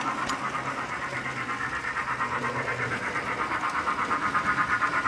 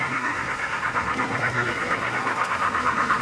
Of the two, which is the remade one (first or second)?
second